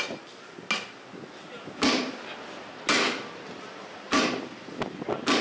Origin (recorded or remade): recorded